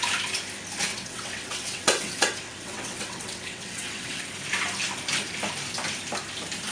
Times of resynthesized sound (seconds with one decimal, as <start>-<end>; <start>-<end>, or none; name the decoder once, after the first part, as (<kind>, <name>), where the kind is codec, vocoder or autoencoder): 0.9-4.2 (vocoder, WaveNeXt)